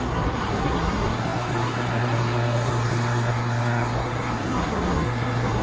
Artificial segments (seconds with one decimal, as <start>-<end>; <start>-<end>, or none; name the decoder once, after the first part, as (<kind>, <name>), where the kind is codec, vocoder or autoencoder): 0.0-5.6 (codec, SNAC)